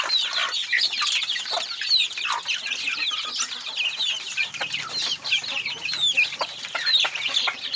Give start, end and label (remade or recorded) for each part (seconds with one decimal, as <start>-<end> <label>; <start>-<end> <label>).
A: 0.0-7.8 recorded